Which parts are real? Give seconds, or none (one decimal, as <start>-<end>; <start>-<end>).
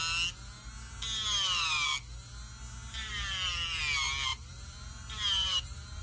0.0-3.0; 3.8-4.3